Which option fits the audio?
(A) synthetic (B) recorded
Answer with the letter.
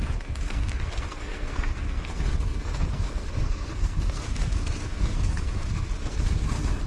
A